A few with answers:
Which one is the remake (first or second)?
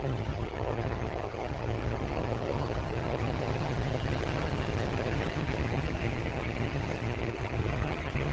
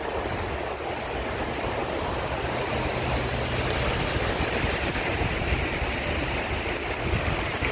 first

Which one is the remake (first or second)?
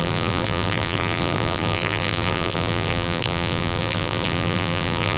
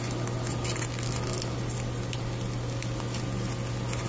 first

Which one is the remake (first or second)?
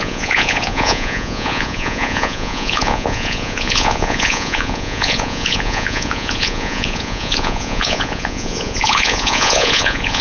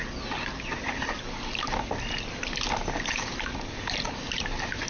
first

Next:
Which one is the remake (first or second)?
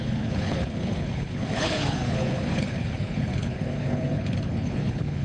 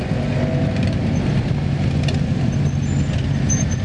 first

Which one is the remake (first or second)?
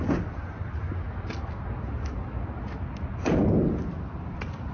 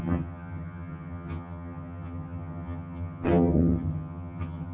second